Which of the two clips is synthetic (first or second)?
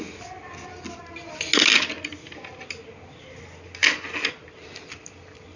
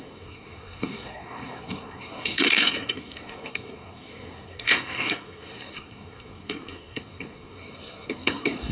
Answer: second